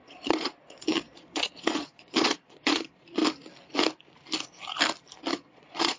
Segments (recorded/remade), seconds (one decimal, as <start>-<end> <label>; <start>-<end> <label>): 0.0-3.2 remade; 3.2-5.3 recorded; 5.3-6.0 remade